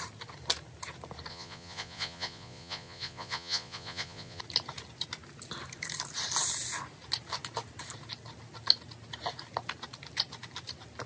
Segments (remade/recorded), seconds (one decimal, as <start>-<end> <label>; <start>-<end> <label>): 0.0-1.3 recorded; 1.3-4.4 remade; 4.4-11.1 recorded